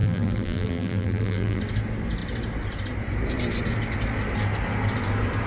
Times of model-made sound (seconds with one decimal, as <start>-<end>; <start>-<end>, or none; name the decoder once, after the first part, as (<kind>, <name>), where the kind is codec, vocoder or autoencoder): 0.0-1.6 (vocoder, BigVGAN v2)